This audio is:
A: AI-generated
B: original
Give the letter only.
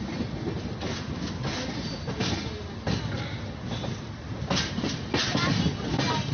B